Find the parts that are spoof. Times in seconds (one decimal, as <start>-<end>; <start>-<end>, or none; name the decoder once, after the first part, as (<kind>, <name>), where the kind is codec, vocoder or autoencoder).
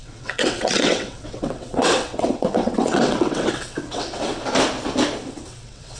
0.0-4.4 (vocoder, WaveNeXt); 5.2-6.0